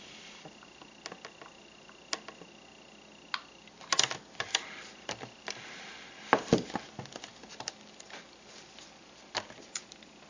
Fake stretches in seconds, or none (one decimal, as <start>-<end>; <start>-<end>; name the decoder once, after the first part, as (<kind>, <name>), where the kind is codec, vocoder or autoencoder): none